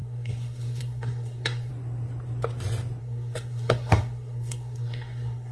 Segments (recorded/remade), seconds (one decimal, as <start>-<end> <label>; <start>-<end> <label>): 0.0-1.7 remade; 1.7-3.0 recorded; 3.0-5.5 remade